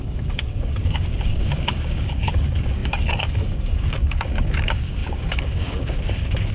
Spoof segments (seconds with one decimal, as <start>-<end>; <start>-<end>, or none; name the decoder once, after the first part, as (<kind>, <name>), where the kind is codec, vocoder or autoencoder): 0.0-6.5 (codec, DAC)